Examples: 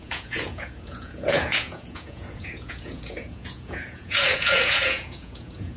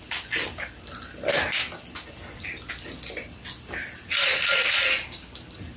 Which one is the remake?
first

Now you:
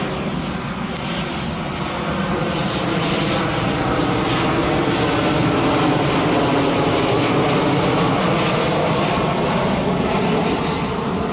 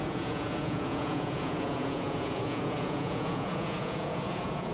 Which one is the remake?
second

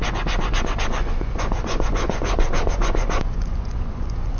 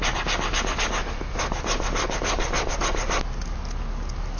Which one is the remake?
first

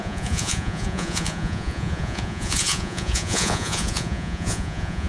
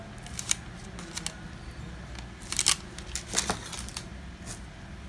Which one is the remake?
first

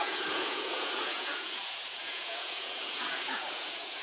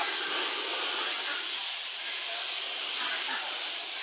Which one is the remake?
first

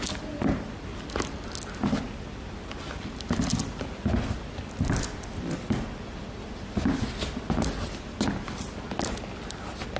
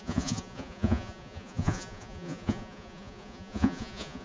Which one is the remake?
second